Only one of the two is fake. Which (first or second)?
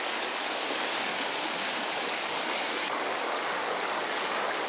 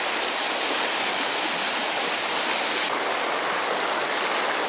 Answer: first